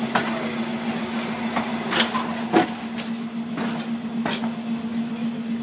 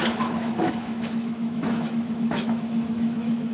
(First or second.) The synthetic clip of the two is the second